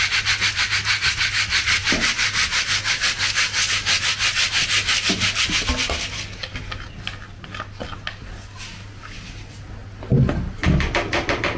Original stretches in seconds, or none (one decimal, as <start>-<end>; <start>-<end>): 0.0-11.6

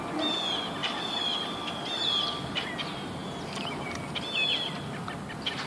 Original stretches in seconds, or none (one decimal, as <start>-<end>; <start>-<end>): 0.0-0.8; 2.0-3.2

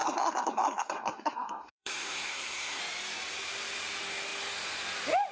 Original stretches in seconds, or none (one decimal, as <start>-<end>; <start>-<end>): 2.8-5.3

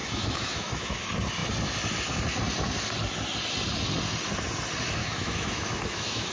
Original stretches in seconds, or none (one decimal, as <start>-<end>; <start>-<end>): 1.0-5.0

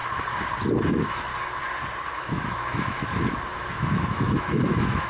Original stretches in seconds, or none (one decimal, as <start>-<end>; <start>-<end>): 0.0-0.9; 1.3-2.1